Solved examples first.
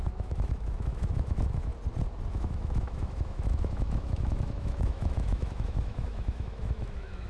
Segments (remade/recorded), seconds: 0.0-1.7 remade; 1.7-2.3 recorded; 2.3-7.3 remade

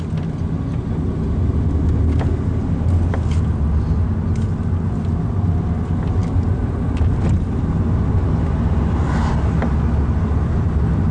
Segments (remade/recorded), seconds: 0.0-11.1 recorded

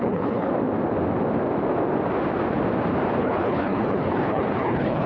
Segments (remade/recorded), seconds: 0.0-0.5 remade; 0.5-3.2 recorded; 3.2-5.1 remade

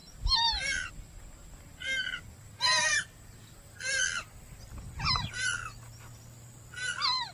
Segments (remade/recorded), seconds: 0.0-7.3 recorded

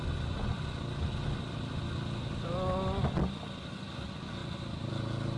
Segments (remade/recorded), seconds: 0.0-5.4 recorded

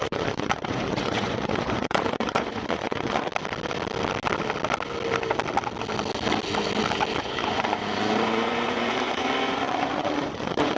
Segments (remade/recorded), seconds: 0.0-3.3 remade; 3.3-7.2 recorded; 7.2-10.8 remade

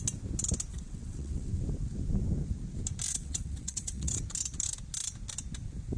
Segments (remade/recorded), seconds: 0.0-0.7 recorded; 0.7-1.5 remade; 1.5-3.1 recorded; 3.1-4.2 remade; 4.2-6.0 recorded